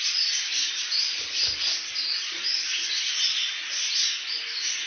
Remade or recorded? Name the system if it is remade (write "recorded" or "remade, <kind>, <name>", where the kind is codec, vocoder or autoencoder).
recorded